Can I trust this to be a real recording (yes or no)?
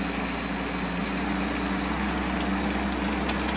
yes